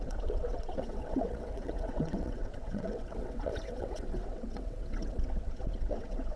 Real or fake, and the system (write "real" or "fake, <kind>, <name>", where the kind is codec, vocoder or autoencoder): fake, vocoder, WaveNeXt